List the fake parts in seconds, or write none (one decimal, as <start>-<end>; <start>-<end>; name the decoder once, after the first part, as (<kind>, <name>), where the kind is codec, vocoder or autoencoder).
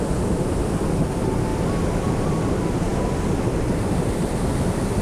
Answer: none